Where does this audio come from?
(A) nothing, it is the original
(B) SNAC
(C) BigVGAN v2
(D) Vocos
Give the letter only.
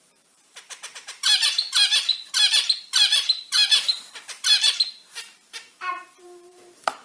C